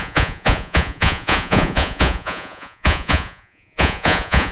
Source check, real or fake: fake